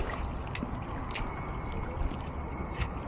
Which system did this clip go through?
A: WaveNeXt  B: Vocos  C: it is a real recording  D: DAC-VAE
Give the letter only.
C